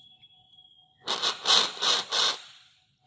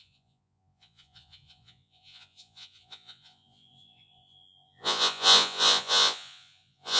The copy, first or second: second